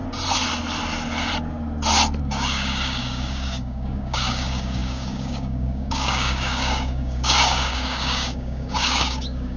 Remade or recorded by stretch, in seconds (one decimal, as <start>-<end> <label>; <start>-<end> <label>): 0.0-2.2 recorded; 2.2-9.6 remade

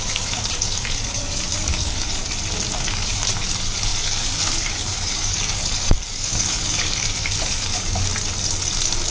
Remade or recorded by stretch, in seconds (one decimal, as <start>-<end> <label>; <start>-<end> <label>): 0.0-2.2 remade; 2.2-2.9 recorded; 2.9-8.1 remade; 8.1-9.1 recorded

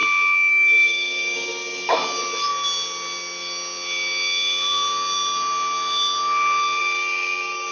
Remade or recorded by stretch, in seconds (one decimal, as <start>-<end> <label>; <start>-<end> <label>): 0.0-0.5 recorded; 0.5-2.2 remade; 2.2-6.8 recorded; 6.8-7.7 remade